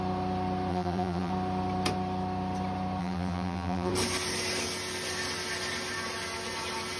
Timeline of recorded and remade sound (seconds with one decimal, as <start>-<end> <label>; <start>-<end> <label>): 0.0-0.7 recorded; 0.7-1.3 remade; 1.3-3.0 recorded; 3.0-3.9 remade; 3.9-7.0 recorded